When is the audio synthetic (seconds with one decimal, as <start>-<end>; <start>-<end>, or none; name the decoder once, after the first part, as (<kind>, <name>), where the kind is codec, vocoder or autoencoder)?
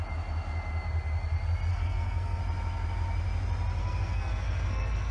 1.7-2.4 (codec, SNAC); 3.8-5.1